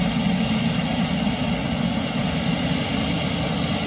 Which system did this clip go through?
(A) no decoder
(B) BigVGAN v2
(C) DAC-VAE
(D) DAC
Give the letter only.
A